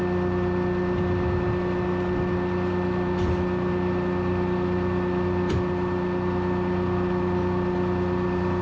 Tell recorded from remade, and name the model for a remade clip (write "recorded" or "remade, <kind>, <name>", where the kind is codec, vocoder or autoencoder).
recorded